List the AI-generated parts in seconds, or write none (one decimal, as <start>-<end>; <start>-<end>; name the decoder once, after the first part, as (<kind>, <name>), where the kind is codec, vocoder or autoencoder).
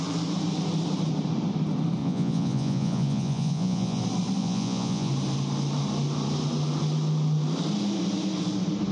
2.0-4.0 (vocoder, Vocos); 4.4-5.1